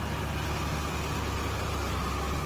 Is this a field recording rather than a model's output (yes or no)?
yes